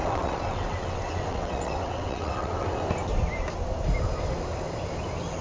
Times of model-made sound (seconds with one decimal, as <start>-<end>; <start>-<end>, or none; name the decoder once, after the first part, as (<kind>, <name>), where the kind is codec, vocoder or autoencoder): 0.0-2.8 (vocoder, WaveNeXt)